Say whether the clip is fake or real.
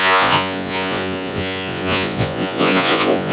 fake